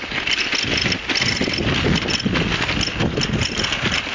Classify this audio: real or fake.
real